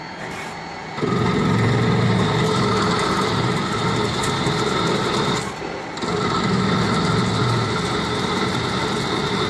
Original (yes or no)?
yes